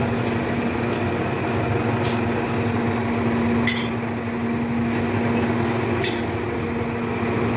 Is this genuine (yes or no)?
yes